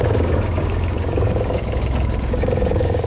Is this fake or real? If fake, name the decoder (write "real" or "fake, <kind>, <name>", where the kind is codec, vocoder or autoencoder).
fake, codec, DAC